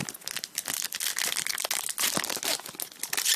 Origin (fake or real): real